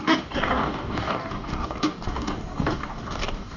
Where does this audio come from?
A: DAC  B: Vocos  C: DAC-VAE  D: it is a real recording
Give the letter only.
A